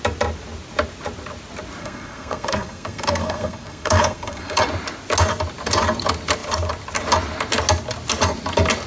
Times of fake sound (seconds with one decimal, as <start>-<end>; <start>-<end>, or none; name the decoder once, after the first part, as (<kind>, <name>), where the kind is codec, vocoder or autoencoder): 1.8-4.6 (codec, SNAC)